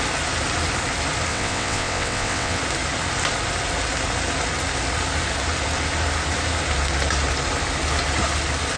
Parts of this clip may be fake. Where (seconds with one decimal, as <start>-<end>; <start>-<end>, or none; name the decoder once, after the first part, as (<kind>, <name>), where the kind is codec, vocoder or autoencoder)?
1.3-2.6 (vocoder, WaveNeXt)